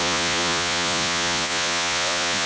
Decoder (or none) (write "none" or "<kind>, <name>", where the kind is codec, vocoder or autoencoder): vocoder, Vocos